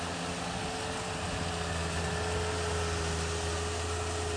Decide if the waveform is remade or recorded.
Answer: recorded